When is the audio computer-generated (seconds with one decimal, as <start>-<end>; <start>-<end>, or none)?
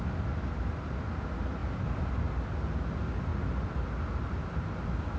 none